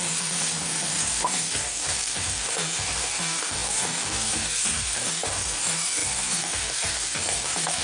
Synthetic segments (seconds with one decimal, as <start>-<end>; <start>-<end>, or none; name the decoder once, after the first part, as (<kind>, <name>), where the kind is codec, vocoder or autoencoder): 0.0-7.8 (codec, DAC)